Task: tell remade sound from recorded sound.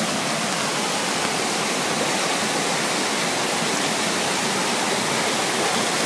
recorded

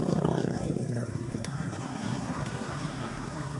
remade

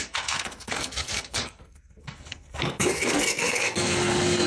remade